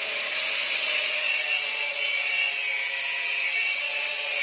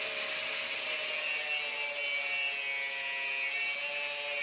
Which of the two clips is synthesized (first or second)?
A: first